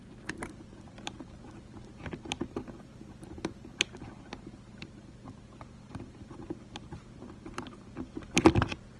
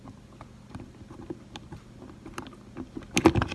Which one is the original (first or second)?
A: second